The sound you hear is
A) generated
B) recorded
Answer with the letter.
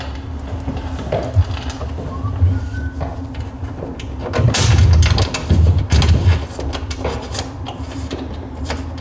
B